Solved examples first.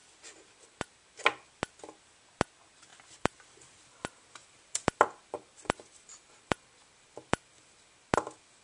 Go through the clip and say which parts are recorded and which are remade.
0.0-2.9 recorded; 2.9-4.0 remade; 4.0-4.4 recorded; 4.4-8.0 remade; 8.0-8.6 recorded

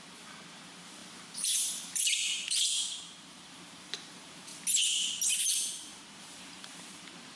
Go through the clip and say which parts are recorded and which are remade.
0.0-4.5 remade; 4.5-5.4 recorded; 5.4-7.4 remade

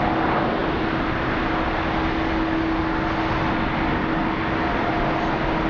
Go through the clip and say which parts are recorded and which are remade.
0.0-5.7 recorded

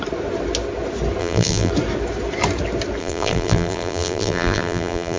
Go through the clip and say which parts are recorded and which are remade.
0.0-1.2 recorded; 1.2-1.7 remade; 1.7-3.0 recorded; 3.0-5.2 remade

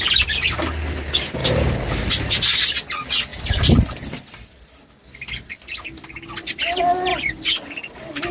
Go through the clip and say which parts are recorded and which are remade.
0.0-3.3 recorded; 3.3-4.1 remade; 4.1-8.3 recorded

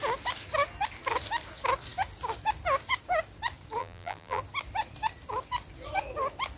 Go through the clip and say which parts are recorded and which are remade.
0.0-3.8 recorded; 3.8-4.4 remade; 4.4-6.6 recorded

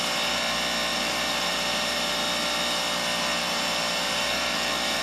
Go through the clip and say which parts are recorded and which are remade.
0.0-0.9 recorded; 0.9-2.1 remade; 2.1-3.3 recorded; 3.3-5.0 remade